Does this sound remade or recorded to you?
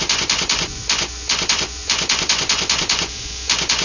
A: remade